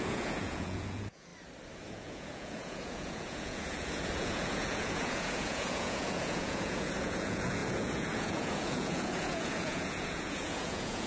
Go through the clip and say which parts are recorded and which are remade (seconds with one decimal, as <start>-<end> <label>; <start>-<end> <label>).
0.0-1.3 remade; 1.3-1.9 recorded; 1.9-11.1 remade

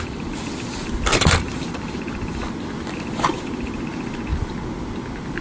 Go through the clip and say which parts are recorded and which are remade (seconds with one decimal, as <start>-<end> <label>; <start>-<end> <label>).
0.0-1.1 recorded; 1.1-2.5 remade; 2.5-5.4 recorded

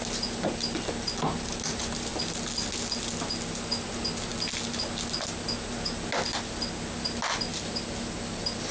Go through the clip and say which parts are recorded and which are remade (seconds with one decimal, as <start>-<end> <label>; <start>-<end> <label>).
0.0-8.7 recorded

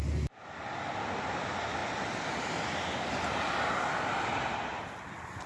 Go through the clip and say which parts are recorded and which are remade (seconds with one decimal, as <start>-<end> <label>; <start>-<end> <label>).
0.0-5.5 recorded

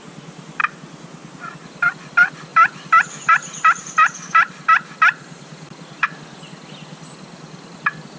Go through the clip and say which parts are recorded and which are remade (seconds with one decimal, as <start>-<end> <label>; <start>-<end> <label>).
0.0-0.6 remade; 0.6-2.1 recorded; 2.1-8.2 remade